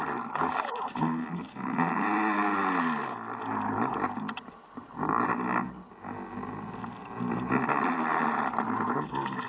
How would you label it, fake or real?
real